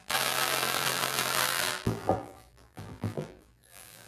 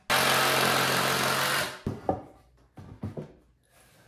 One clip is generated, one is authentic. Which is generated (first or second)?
first